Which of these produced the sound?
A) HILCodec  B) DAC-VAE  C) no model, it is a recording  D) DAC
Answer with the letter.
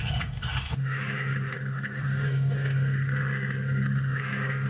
B